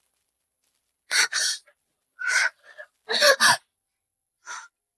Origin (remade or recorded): recorded